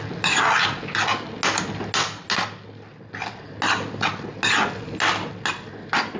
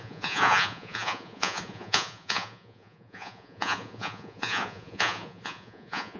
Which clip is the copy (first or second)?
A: second